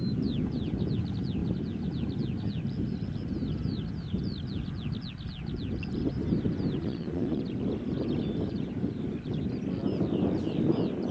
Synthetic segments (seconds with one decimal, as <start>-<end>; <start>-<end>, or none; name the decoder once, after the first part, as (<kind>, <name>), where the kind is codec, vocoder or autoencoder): 6.8-7.4 (vocoder, Vocos)